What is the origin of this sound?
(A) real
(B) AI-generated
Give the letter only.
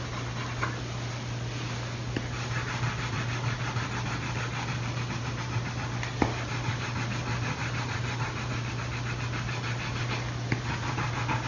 A